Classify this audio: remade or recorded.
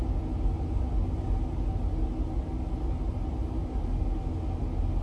recorded